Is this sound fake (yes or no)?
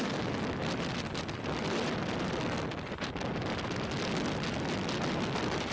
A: no